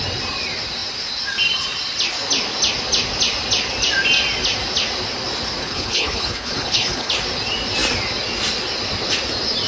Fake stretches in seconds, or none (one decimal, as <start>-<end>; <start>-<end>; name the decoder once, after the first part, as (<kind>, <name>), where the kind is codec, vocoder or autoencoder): 5.6-7.1 (codec, HILCodec)